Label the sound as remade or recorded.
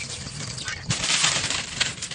recorded